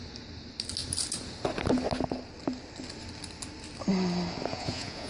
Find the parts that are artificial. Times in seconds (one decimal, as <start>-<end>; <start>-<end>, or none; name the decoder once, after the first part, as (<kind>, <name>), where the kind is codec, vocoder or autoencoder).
4.5-5.1 (vocoder, Vocos)